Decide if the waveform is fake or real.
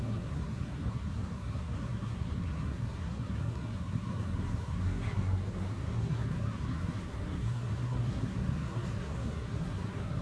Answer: fake